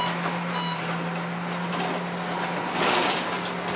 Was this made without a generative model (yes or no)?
yes